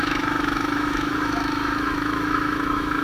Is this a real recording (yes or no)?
no